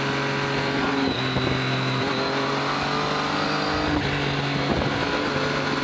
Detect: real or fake real